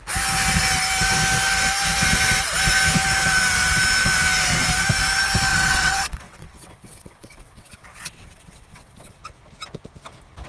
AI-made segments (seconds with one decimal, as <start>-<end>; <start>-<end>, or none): 5.5-9.2